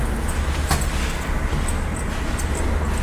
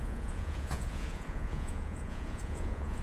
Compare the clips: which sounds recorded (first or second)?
first